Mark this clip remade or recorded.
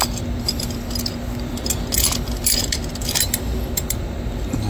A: recorded